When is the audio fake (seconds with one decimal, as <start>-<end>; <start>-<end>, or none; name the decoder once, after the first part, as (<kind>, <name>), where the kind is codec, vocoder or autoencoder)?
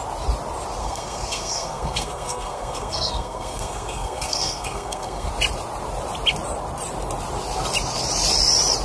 0.8-5.3 (codec, SNAC)